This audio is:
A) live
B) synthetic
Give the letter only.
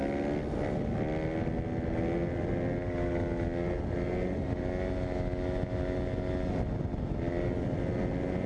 A